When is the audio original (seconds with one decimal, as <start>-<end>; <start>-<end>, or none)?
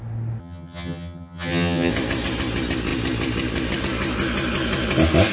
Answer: 0.0-0.4; 1.9-5.3